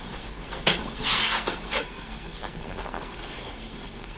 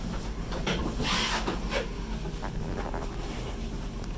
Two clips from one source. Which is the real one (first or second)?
second